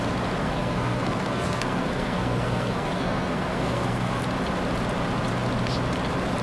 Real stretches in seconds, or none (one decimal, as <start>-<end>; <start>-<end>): 0.0-0.4; 4.2-6.4